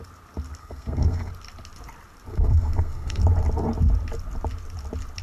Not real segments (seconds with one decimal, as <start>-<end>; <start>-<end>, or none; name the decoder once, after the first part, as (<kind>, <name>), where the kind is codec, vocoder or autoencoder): 0.6-1.3 (codec, SNAC); 2.3-3.2